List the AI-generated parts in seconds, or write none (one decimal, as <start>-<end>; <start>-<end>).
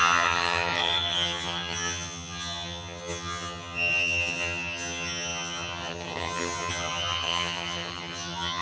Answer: 0.0-8.6